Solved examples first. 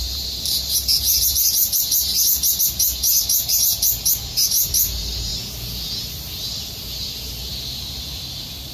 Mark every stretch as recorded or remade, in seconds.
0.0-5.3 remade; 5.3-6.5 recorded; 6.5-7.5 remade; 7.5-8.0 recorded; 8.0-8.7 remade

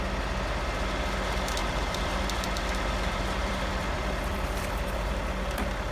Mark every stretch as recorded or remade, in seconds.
0.0-1.6 recorded; 1.6-5.1 remade; 5.1-5.9 recorded